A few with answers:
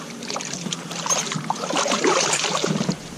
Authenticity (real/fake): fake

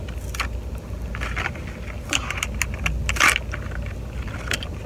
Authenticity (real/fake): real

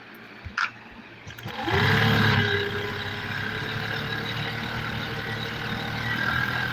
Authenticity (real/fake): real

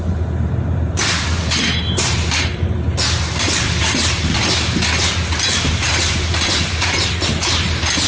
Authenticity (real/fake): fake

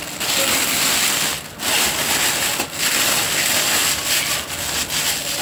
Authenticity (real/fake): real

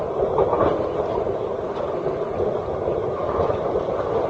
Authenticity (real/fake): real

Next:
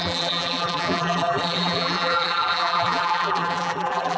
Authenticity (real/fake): fake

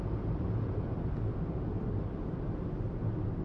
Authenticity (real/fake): real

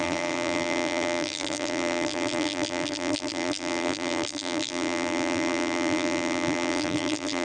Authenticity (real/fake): fake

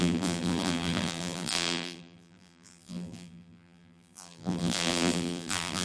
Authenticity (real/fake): fake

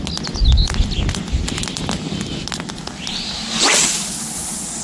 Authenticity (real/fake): real